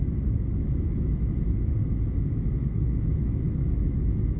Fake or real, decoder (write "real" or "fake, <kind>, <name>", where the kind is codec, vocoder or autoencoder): fake, autoencoder, DAC-VAE